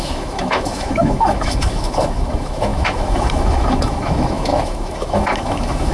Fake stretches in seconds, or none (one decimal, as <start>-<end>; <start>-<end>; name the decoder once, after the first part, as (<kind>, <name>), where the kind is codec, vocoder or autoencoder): 0.0-5.9 (autoencoder, DAC-VAE)